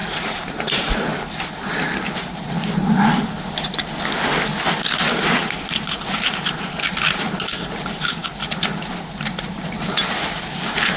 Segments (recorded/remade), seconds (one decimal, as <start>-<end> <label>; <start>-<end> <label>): 0.0-0.9 remade; 0.9-11.0 recorded